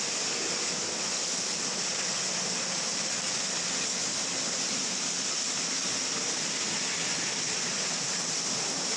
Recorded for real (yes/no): yes